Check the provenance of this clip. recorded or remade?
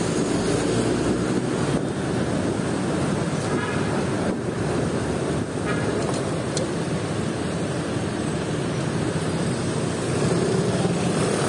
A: recorded